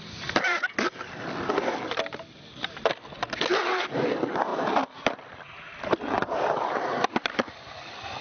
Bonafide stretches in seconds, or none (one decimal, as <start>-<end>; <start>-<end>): 0.0-8.2